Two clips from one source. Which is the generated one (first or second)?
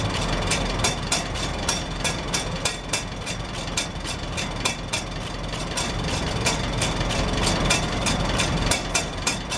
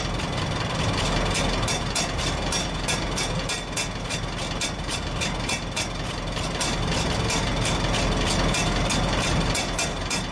first